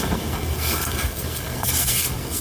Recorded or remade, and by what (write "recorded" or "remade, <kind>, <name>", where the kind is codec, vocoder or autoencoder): remade, codec, SNAC